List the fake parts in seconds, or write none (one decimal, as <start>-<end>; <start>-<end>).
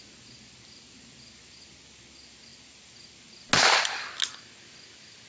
none